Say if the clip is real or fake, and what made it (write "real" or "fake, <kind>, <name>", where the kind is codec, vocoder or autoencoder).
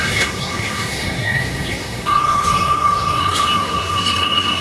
fake, codec, SNAC